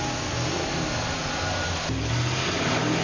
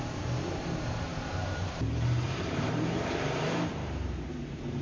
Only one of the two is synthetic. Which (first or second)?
second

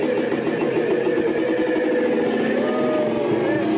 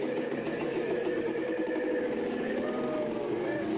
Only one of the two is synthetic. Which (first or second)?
second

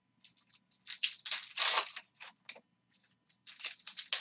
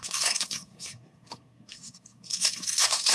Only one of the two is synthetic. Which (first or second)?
second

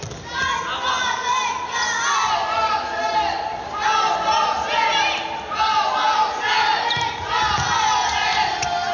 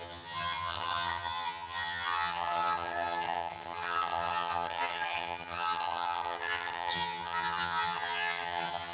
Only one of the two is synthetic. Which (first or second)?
second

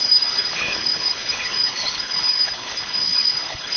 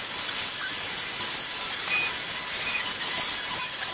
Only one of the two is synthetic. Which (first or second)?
first